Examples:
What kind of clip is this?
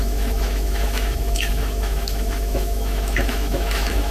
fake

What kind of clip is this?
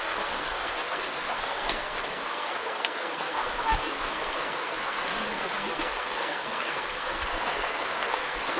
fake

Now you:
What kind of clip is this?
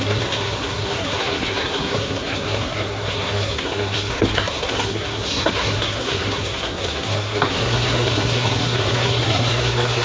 fake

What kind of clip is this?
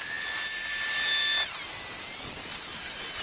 real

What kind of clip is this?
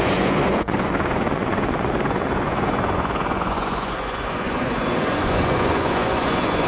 fake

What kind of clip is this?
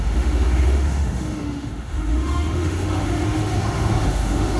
fake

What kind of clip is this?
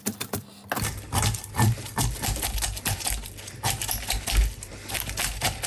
real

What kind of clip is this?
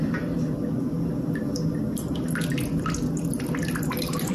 real